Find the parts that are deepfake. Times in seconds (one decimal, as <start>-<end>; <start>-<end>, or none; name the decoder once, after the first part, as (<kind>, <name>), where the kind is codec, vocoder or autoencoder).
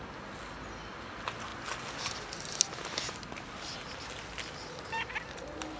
none